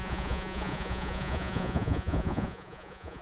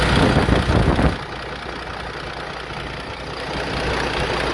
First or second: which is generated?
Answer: first